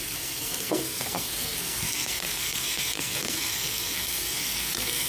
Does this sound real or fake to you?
fake